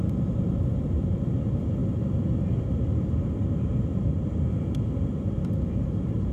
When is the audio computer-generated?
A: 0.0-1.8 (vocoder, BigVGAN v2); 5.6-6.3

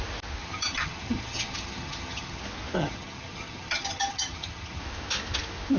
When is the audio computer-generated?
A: 0.4-2.4 (vocoder, HiFi-GAN); 2.8-4.8

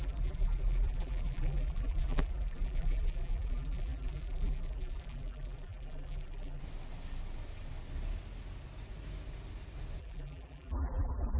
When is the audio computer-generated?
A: 0.0-6.6 (vocoder, BigVGAN v2); 10.0-11.4

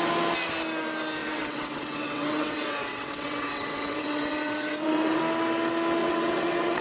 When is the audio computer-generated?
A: 1.2-5.2 (vocoder, WaveNeXt); 6.0-6.8